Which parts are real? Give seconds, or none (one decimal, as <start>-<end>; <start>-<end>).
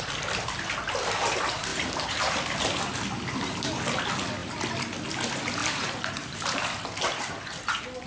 0.0-1.7; 2.2-5.6; 6.6-8.1